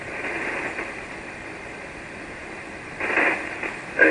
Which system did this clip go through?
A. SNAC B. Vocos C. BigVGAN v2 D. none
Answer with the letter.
C